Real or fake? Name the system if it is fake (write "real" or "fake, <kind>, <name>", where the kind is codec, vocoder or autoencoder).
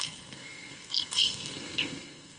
fake, codec, SNAC